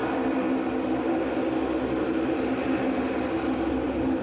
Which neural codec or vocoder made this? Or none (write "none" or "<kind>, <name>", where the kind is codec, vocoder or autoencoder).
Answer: none